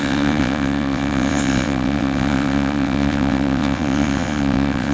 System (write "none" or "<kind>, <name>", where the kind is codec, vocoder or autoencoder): vocoder, WaveNeXt